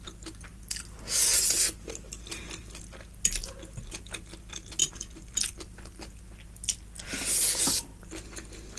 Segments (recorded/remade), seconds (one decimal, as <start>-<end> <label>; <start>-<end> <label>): 0.0-8.8 recorded